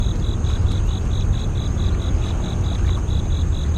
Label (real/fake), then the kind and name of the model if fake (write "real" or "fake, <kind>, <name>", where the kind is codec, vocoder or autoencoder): real